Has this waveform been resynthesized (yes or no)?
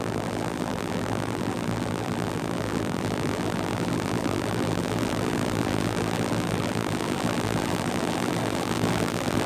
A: yes